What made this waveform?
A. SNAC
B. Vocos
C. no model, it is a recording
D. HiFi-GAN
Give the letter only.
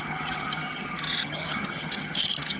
D